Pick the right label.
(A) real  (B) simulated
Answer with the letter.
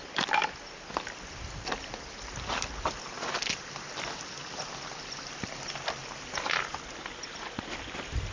A